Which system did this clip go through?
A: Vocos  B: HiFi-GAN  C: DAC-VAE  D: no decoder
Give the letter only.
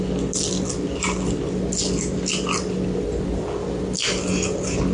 D